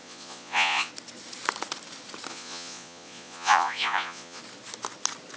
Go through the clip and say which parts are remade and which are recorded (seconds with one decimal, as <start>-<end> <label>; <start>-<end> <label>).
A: 0.0-0.9 remade; 0.9-2.3 recorded; 2.3-4.4 remade; 4.4-5.4 recorded